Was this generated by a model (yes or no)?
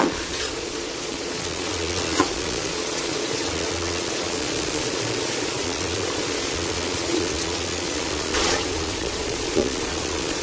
yes